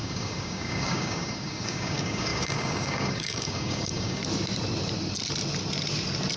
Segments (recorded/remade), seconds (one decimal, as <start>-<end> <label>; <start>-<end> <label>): 0.0-4.2 remade; 4.2-6.4 recorded